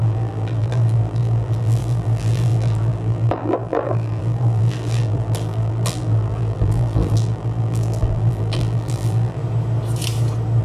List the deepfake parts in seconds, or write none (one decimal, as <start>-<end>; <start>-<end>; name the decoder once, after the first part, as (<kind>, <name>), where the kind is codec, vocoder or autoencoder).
0.0-9.4 (vocoder, BigVGAN v2)